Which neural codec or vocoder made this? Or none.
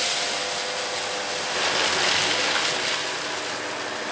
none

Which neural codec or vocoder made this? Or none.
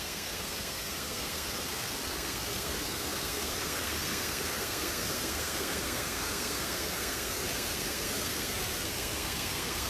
codec, SNAC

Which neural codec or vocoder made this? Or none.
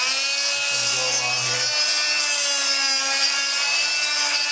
none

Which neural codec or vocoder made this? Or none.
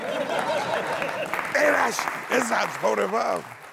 none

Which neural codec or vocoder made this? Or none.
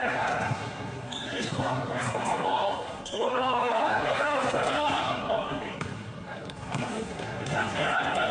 codec, SNAC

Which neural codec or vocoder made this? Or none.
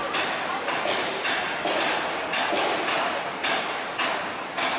none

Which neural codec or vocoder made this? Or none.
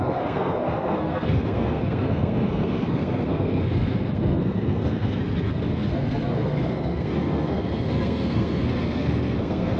codec, SNAC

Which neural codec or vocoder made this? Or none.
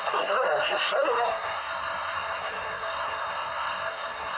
codec, SNAC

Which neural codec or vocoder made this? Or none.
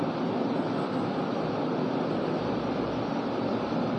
none